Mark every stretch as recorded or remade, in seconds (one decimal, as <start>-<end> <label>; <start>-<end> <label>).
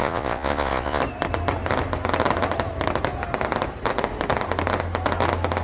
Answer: 0.0-1.0 remade; 1.0-5.6 recorded